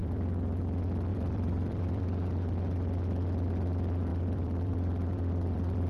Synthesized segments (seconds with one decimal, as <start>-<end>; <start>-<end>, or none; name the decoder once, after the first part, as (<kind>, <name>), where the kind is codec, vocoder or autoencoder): 0.0-0.6 (vocoder, BigVGAN v2); 1.1-2.0; 4.1-5.9